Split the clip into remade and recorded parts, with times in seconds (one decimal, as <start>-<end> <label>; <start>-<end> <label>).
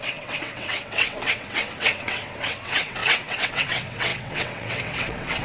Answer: 0.0-5.4 remade